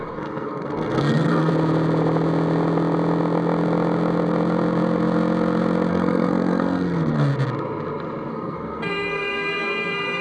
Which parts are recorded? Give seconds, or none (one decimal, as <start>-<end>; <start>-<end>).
1.5-5.9; 7.3-8.3